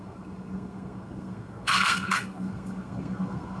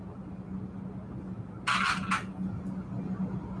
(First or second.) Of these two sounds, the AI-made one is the first